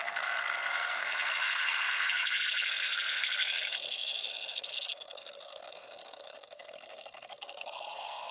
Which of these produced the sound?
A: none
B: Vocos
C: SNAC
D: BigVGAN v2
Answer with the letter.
C